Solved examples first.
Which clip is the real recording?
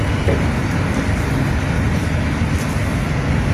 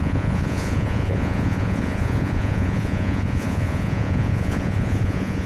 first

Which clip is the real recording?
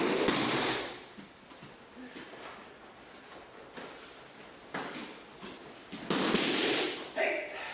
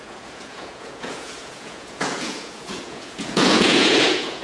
first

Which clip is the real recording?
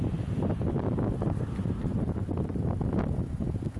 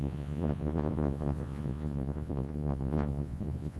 first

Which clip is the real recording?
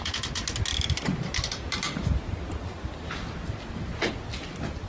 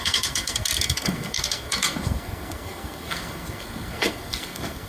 first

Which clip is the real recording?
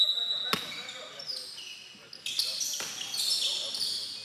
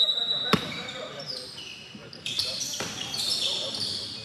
first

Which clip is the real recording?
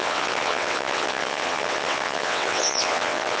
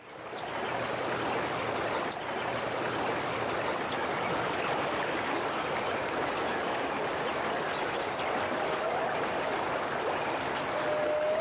second